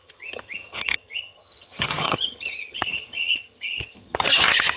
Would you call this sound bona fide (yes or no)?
no